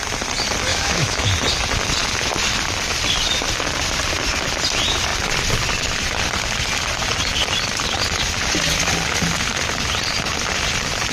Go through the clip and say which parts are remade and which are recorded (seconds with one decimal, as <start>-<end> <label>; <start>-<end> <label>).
0.0-0.7 recorded; 0.7-1.3 remade; 1.3-11.1 recorded